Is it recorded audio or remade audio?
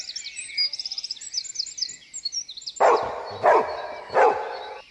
recorded